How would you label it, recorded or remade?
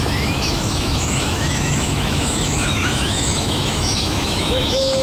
remade